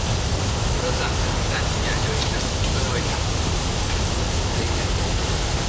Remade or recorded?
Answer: recorded